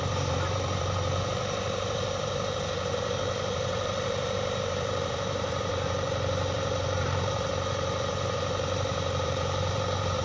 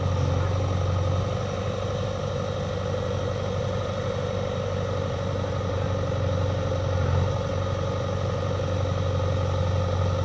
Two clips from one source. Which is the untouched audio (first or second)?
second